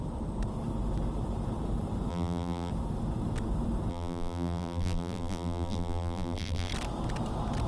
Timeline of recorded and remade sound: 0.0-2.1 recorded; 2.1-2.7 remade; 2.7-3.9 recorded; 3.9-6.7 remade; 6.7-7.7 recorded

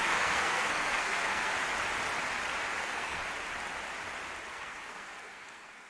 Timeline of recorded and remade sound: 0.0-1.5 remade; 1.5-2.8 recorded; 2.8-3.2 remade; 3.2-4.5 recorded; 4.5-5.9 remade

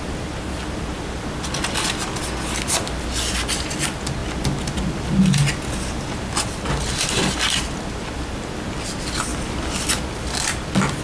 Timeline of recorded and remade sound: 0.0-11.0 recorded

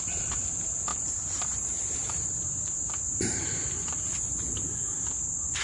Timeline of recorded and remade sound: 0.0-0.9 recorded; 0.9-4.3 remade; 4.3-5.6 recorded